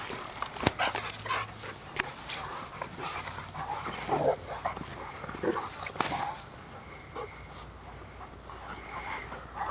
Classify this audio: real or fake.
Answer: real